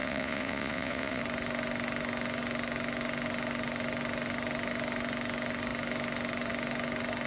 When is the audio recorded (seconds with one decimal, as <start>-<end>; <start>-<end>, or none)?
1.2-7.3